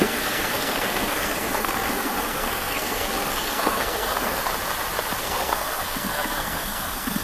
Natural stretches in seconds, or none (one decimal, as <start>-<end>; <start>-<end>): 4.5-5.2